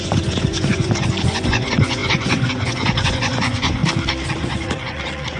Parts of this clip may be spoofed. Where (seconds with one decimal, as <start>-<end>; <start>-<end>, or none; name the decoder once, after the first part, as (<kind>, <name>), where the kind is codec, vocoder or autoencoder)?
0.0-3.8 (vocoder, Vocos); 4.3-5.4